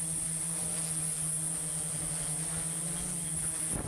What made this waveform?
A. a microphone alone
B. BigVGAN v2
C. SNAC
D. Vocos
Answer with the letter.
A